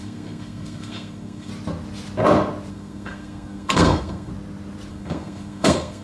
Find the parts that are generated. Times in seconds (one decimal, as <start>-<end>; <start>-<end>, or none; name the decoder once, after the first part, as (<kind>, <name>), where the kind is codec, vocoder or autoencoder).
0.0-1.5 (codec, SNAC); 2.7-4.3; 4.9-6.0